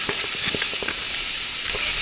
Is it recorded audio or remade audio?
recorded